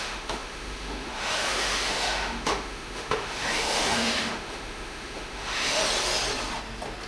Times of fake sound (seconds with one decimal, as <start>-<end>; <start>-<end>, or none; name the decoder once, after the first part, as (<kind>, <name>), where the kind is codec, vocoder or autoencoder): 0.0-5.8 (autoencoder, DAC-VAE)